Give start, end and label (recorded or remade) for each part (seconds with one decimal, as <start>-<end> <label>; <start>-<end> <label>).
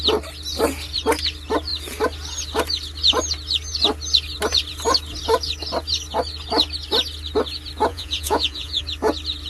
0.0-7.9 recorded; 7.9-8.8 remade; 8.8-9.5 recorded